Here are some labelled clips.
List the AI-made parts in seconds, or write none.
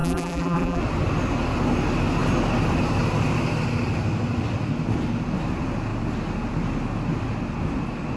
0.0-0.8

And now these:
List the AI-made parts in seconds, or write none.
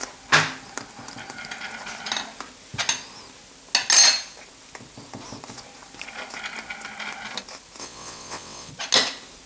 7.8-8.7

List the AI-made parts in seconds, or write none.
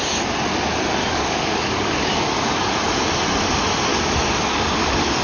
1.0-2.7; 3.9-4.6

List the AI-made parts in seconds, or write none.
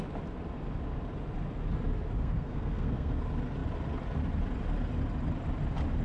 2.2-3.2